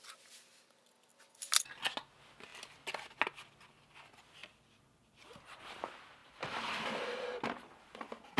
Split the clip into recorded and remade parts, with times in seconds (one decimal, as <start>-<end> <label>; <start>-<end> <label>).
0.0-2.5 recorded; 2.5-3.1 remade; 3.1-6.2 recorded; 6.2-7.0 remade; 7.0-8.4 recorded